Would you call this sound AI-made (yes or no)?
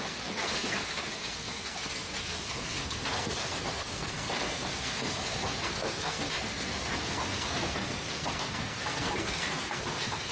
yes